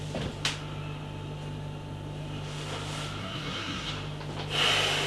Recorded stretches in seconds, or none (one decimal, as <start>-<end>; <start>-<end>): 0.0-3.2; 3.9-5.1